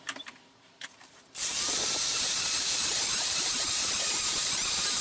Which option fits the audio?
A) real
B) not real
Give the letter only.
B